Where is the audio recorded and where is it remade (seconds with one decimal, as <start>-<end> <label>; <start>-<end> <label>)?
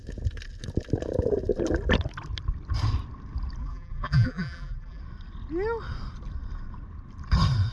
0.0-3.6 recorded; 3.6-5.0 remade; 5.0-7.7 recorded